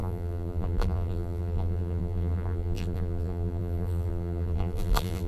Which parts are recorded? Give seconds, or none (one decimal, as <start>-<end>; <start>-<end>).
none